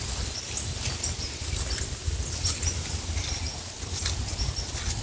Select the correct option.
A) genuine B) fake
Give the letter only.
A